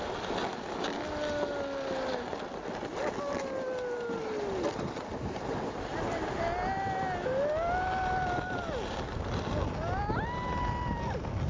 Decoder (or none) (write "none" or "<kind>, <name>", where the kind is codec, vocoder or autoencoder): none